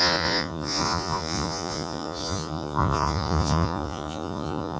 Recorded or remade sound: remade